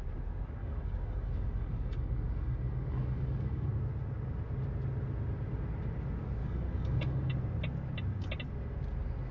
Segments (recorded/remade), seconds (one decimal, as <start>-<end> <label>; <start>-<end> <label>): 0.0-0.6 recorded; 0.6-3.8 remade; 3.8-6.4 recorded; 6.4-7.3 remade; 7.3-9.3 recorded